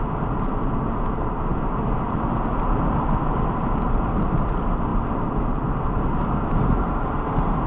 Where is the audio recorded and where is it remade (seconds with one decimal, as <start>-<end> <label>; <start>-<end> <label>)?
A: 0.0-7.7 recorded